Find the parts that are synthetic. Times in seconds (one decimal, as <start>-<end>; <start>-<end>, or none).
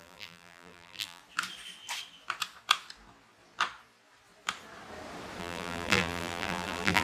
0.0-1.2; 5.4-7.0